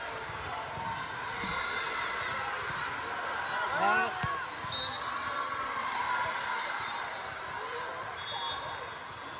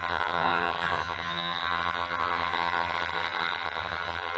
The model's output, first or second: second